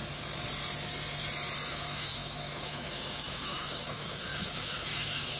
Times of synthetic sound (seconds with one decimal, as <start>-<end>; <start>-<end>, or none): 1.7-5.4